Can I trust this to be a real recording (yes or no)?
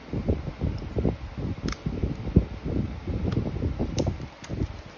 yes